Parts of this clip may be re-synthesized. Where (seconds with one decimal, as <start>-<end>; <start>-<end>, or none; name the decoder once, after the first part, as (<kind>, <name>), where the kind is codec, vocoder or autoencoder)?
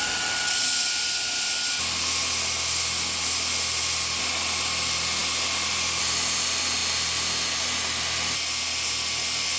none